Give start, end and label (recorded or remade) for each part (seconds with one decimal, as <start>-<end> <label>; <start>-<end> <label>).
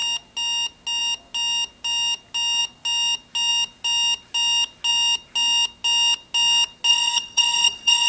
0.0-6.9 recorded; 6.9-8.1 remade